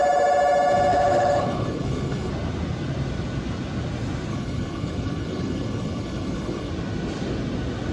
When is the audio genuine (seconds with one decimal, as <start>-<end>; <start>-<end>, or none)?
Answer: 0.0-0.9; 2.3-4.3; 6.7-7.9